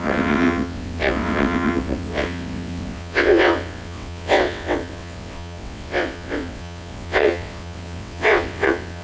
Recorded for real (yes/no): no